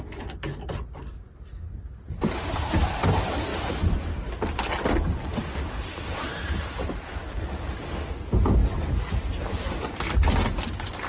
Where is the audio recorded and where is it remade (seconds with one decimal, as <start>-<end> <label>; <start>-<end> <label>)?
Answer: 0.0-3.5 recorded; 3.5-4.7 remade; 4.7-8.6 recorded; 8.6-9.4 remade; 9.4-11.1 recorded